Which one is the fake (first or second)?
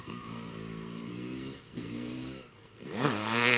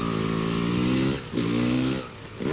first